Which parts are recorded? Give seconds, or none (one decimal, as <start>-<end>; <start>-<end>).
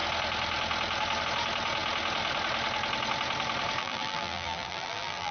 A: 0.0-3.8